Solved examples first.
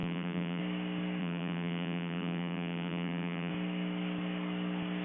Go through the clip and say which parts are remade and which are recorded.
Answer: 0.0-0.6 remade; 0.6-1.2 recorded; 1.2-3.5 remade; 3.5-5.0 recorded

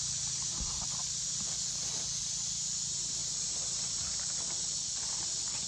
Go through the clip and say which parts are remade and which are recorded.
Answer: 0.0-0.5 remade; 0.5-1.3 recorded; 1.3-3.2 remade; 3.2-4.2 recorded; 4.2-5.7 remade

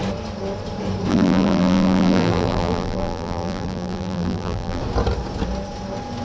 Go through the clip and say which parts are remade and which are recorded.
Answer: 0.0-1.1 recorded; 1.1-4.8 remade; 4.8-6.2 recorded

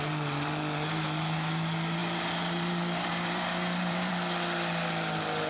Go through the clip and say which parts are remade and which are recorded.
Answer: 0.0-2.0 recorded; 2.0-4.1 remade; 4.1-5.5 recorded

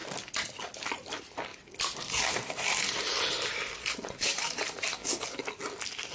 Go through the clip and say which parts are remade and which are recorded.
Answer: 0.0-1.1 recorded; 1.1-1.5 remade; 1.5-2.2 recorded; 2.2-3.1 remade; 3.1-3.8 recorded; 3.8-5.0 remade; 5.0-6.1 recorded